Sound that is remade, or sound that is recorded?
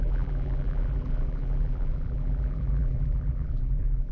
remade